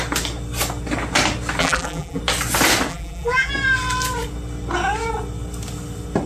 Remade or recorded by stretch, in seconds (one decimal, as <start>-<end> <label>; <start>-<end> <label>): 0.0-1.6 recorded; 1.6-2.2 remade; 2.2-2.9 recorded; 2.9-3.5 remade; 3.5-6.3 recorded